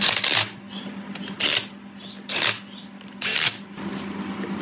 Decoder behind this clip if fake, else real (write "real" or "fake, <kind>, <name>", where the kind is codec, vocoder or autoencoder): real